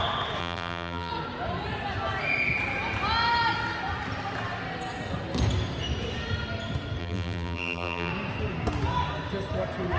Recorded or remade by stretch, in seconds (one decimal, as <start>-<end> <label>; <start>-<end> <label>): 0.0-0.4 recorded; 0.4-1.1 remade; 1.1-7.0 recorded; 7.0-8.1 remade; 8.1-10.0 recorded